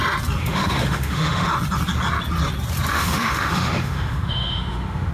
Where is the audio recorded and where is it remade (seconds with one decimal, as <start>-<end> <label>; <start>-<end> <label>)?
0.0-0.4 recorded; 0.4-1.5 remade; 1.5-2.9 recorded; 2.9-5.1 remade